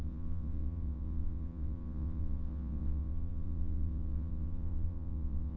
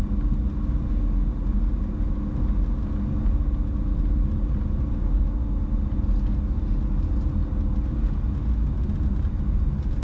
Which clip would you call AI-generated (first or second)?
first